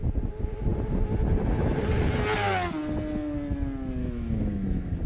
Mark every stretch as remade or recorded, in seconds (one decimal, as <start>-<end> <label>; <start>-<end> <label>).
0.0-4.0 recorded; 4.0-5.1 remade